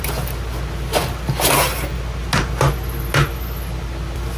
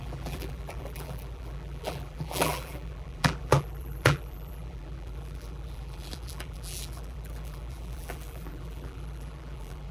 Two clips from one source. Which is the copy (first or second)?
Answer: second